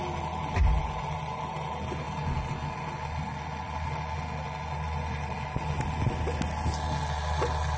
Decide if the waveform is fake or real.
real